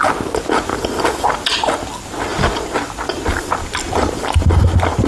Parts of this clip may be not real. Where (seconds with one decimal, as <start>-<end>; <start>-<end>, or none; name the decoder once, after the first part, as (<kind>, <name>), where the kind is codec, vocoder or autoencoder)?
none